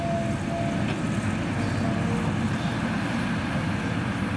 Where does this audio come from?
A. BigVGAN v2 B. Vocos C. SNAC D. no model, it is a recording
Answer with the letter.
D